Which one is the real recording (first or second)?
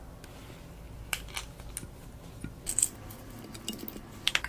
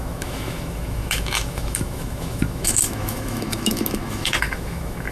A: first